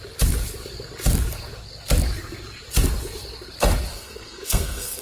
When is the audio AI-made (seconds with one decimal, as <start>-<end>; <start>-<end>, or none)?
3.9-5.0